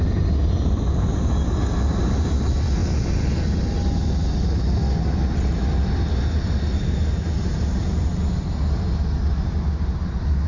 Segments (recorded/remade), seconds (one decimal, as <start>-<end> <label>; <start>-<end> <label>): 0.0-7.5 recorded; 7.5-8.1 remade; 8.1-10.5 recorded